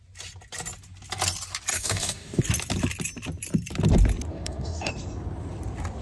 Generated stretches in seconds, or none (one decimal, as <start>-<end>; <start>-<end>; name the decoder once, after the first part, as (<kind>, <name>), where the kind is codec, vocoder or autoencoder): 1.7-2.4 (codec, DAC); 4.3-4.9